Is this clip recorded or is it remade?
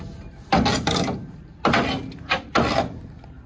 recorded